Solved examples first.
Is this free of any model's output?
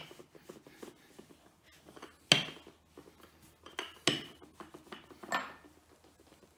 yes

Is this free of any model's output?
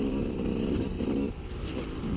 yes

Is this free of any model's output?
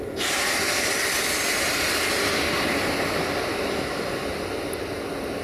yes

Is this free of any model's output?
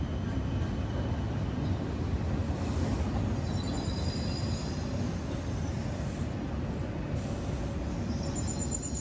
yes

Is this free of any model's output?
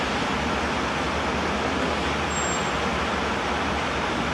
yes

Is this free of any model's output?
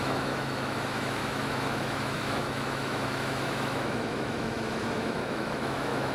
no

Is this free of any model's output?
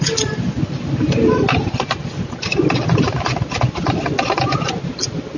yes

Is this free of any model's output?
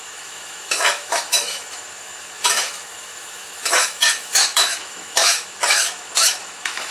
no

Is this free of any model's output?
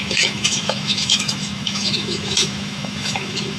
no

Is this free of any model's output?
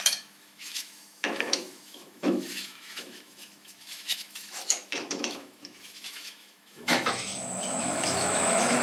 no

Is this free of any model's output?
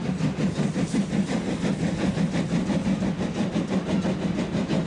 yes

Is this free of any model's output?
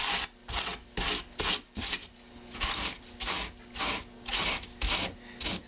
yes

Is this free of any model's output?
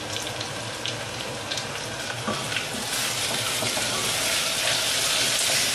yes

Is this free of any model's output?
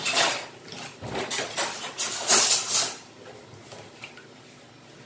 yes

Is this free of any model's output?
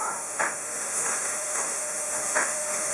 no